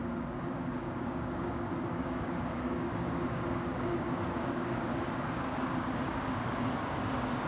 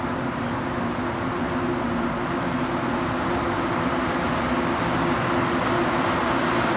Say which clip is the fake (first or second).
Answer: first